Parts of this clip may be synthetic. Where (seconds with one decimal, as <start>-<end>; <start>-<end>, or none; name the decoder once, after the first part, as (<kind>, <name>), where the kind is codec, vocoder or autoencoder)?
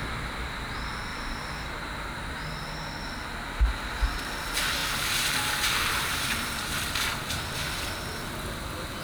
1.1-3.1 (vocoder, BigVGAN v2); 4.8-8.0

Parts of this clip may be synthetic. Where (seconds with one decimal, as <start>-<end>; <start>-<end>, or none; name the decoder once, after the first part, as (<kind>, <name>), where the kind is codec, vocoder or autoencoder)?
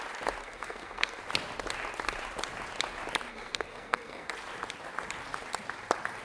0.4-1.2 (codec, SNAC); 3.3-4.3